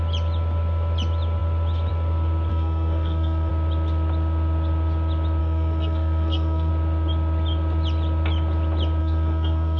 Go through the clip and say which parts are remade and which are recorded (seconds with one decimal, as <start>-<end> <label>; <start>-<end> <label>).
0.0-2.5 recorded; 2.5-3.5 remade; 3.5-5.4 recorded; 5.4-6.7 remade; 6.7-9.0 recorded; 9.0-9.8 remade